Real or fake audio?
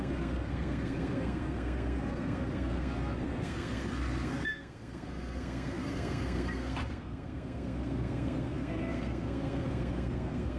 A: fake